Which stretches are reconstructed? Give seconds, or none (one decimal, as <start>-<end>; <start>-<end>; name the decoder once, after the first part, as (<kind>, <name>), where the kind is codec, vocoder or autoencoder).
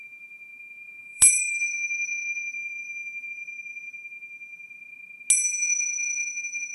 0.0-3.3 (vocoder, BigVGAN v2)